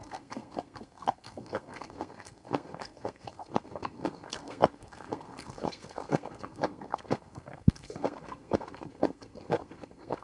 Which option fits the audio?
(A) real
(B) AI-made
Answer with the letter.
B